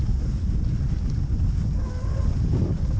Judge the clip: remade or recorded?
recorded